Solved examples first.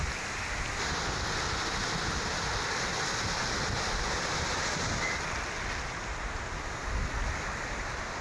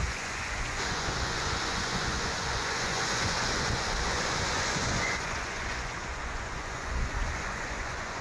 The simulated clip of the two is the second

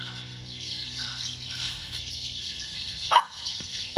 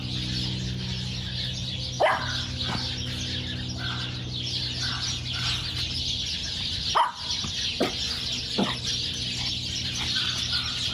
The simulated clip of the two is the first